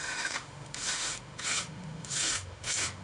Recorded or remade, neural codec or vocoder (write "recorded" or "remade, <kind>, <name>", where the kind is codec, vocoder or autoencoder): remade, autoencoder, DAC-VAE